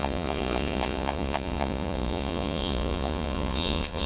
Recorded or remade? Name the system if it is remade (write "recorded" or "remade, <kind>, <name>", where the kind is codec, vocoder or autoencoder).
remade, vocoder, Vocos